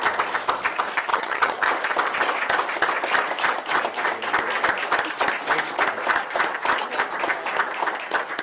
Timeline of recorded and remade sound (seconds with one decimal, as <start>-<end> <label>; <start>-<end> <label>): 0.0-1.1 recorded; 1.1-1.7 remade; 1.7-8.4 recorded